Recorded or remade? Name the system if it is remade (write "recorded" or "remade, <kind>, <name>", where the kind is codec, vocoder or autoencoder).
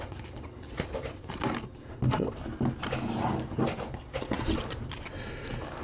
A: recorded